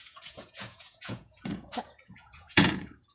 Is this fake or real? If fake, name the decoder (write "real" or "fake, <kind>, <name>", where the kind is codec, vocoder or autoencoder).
fake, vocoder, Vocos